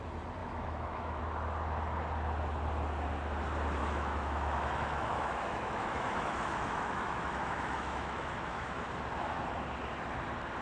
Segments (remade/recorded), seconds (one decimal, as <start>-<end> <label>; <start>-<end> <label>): 0.0-0.4 recorded; 0.4-1.2 remade; 1.2-3.8 recorded; 3.8-8.8 remade; 8.8-10.6 recorded